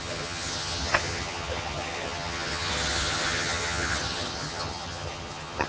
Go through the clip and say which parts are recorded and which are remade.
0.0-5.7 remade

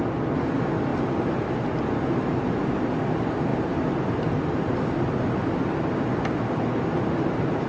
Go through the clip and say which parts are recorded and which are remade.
0.0-0.9 recorded; 0.9-1.5 remade; 1.5-3.5 recorded; 3.5-4.3 remade; 4.3-7.7 recorded

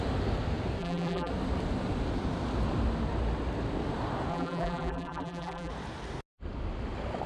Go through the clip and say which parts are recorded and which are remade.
0.0-0.8 recorded; 0.8-1.3 remade; 1.3-4.3 recorded; 4.3-5.7 remade; 5.7-7.3 recorded